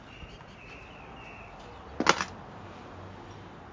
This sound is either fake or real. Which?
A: real